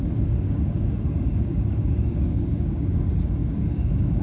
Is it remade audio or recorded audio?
remade